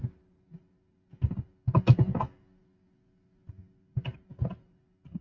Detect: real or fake real